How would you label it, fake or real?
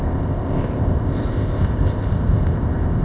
fake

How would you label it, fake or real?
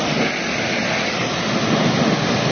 real